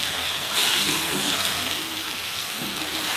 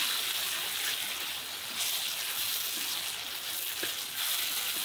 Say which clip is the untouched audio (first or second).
second